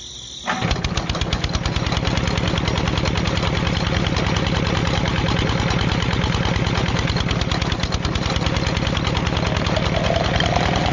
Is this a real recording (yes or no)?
yes